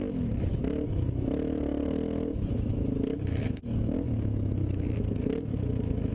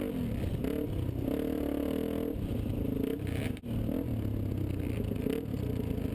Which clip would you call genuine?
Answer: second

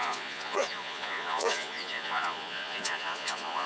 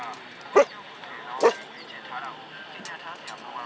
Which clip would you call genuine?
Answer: second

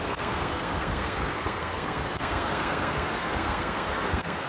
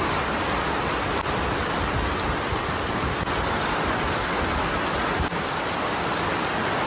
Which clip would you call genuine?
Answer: second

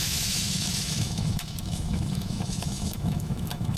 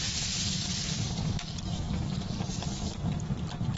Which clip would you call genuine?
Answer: second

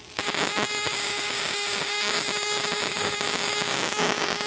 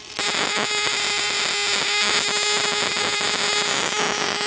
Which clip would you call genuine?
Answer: second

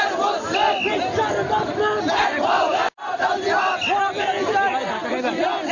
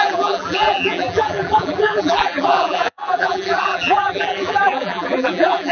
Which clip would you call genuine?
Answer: first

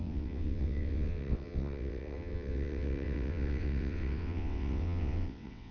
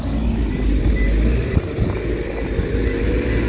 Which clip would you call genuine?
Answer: second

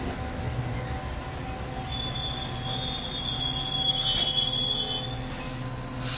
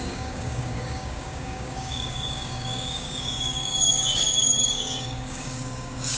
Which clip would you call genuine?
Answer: first